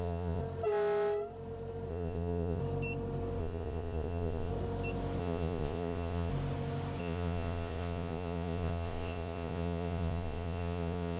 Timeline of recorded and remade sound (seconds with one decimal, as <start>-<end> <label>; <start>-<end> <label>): 0.0-0.4 remade; 0.4-1.9 recorded; 1.9-2.6 remade; 2.6-3.4 recorded; 3.4-4.5 remade; 4.5-5.2 recorded; 5.2-6.3 remade; 6.3-7.0 recorded; 7.0-11.2 remade